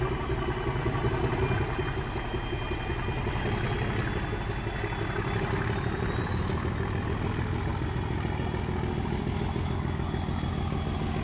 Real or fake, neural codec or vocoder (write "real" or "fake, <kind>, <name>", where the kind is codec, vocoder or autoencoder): real